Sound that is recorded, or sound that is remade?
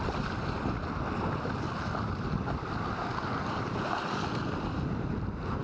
recorded